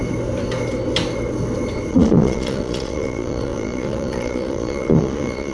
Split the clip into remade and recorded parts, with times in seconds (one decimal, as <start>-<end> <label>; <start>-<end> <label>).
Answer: 0.0-1.9 recorded; 1.9-5.5 remade